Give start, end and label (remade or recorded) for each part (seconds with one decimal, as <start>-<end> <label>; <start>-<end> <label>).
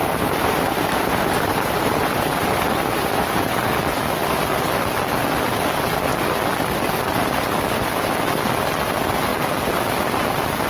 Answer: 0.0-3.7 remade; 3.7-10.7 recorded